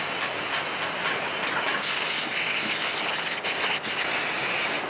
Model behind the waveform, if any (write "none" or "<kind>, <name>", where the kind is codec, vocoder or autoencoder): none